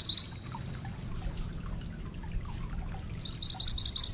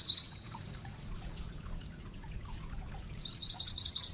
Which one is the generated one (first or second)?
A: second